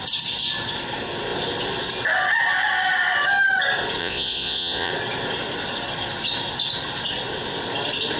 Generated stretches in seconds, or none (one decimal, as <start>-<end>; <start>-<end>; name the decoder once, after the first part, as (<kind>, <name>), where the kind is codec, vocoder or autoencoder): 4.0-4.9 (vocoder, Vocos)